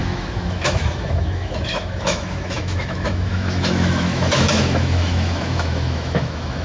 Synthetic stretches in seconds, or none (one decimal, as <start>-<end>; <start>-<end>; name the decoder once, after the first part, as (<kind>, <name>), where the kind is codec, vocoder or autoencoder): 0.0-6.6 (autoencoder, DAC-VAE)